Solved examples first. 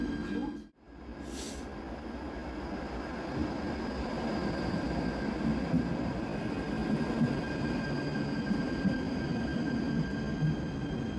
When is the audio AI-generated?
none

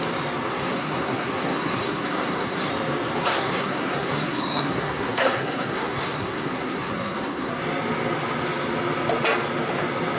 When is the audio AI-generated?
0.5-2.7 (codec, SNAC); 3.2-7.5

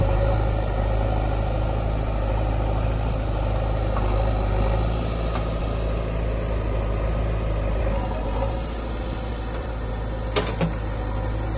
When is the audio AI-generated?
9.3-9.9 (vocoder, BigVGAN v2)

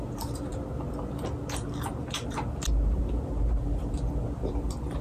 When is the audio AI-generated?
none

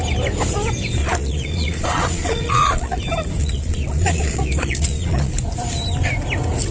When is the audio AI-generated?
1.0-3.0 (vocoder, Vocos); 3.4-5.3

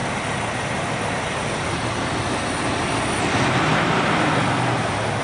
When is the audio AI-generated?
none